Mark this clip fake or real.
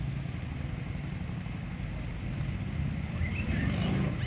real